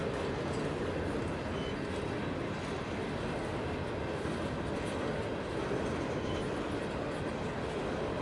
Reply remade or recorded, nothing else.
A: recorded